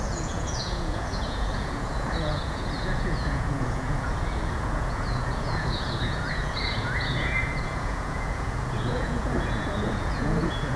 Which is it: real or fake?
fake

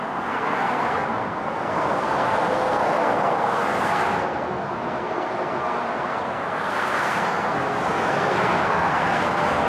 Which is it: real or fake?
fake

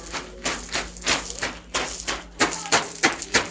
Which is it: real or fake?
real